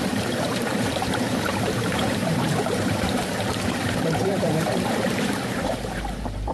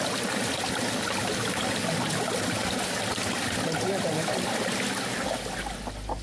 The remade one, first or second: first